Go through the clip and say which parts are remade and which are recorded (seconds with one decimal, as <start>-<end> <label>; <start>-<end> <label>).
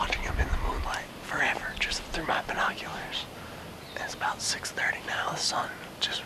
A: 0.0-6.3 recorded